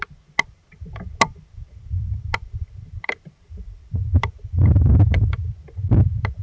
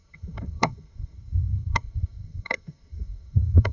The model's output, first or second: second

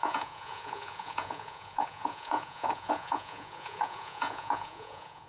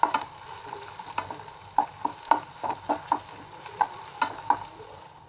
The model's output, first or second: first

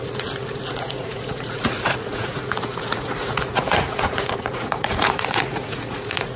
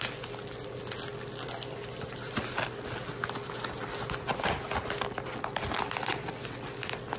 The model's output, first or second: first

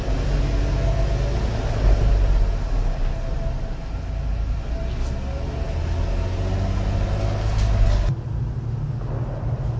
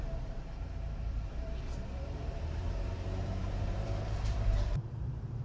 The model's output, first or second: second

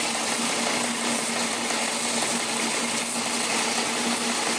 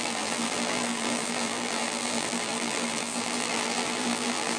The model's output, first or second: second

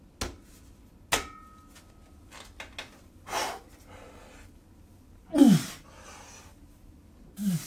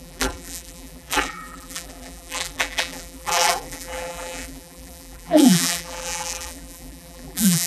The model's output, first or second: second